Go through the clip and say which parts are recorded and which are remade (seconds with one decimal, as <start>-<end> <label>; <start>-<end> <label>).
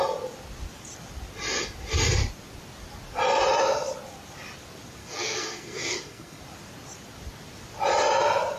0.0-5.0 recorded; 5.0-6.4 remade; 6.4-8.6 recorded